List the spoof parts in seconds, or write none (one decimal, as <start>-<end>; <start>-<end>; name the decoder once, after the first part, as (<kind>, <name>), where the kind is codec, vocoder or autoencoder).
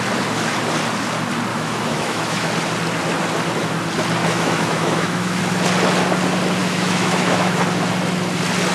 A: 1.5-2.5 (autoencoder, DAC-VAE); 4.2-5.4; 6.6-7.6